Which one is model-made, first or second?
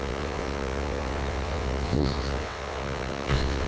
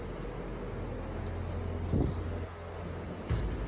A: first